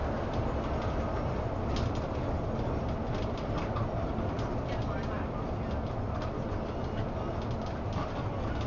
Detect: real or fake real